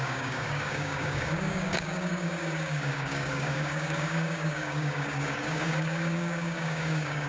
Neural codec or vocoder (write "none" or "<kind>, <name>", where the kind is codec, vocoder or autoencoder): codec, DAC